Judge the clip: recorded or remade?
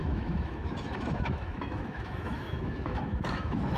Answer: remade